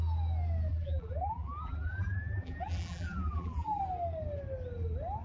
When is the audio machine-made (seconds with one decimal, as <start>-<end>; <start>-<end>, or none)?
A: 0.7-3.8